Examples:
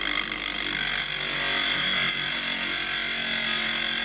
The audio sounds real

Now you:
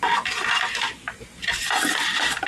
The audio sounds real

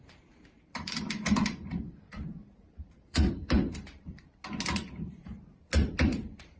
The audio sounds fake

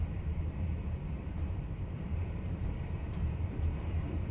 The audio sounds fake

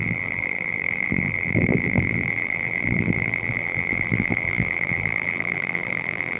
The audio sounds fake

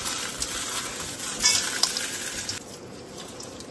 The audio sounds real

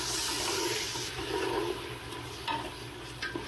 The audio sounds real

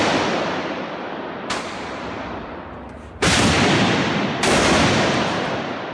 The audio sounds fake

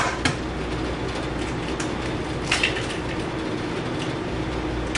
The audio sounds real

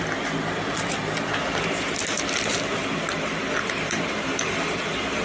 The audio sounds real